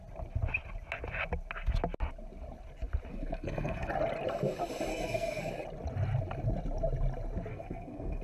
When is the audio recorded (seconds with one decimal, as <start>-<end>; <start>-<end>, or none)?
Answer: 0.0-3.1; 3.9-4.9; 5.5-7.5